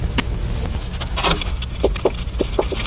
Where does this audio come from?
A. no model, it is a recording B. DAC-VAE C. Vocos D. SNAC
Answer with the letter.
A